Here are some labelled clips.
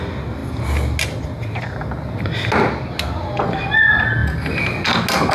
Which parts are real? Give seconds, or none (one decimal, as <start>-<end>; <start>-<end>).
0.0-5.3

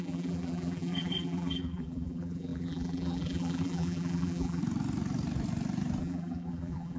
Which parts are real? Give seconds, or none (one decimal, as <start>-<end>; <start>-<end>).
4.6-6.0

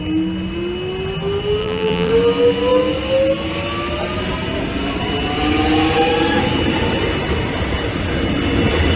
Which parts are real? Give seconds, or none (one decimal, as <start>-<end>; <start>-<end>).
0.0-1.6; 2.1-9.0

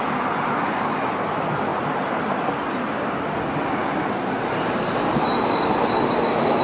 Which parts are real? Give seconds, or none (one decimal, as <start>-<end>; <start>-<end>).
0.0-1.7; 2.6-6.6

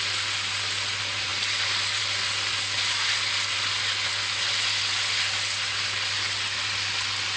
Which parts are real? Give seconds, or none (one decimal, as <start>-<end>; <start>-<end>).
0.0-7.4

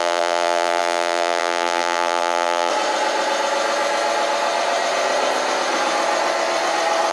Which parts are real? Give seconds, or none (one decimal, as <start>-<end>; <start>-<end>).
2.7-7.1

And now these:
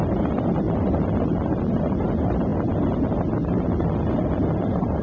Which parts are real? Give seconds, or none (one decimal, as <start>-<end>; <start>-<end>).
none

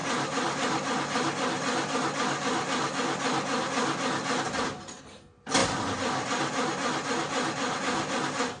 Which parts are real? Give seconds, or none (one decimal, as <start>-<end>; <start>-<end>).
0.0-8.6